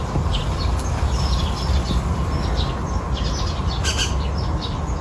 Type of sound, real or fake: real